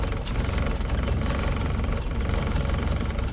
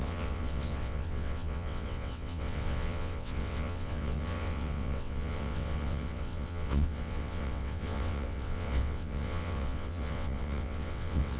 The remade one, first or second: second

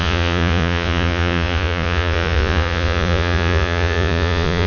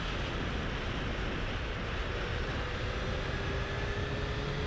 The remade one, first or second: first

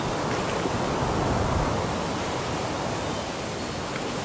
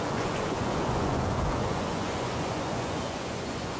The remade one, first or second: second